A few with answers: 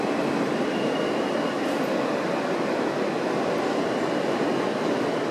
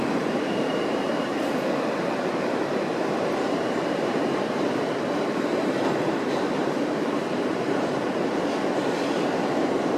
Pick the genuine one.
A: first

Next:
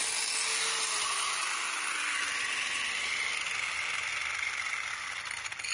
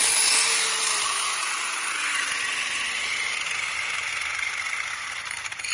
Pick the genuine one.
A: first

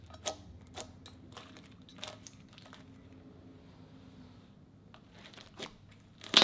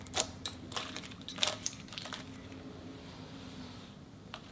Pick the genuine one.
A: first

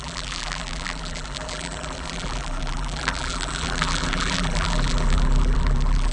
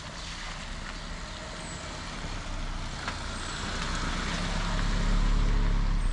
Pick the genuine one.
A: second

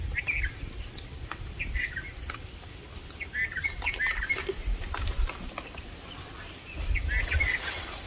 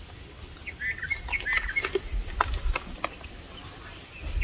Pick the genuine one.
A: second